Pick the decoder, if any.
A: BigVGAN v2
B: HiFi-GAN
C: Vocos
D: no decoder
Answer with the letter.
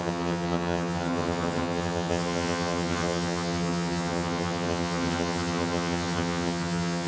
B